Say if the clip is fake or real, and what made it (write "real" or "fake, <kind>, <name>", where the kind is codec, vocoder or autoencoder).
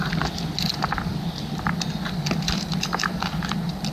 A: real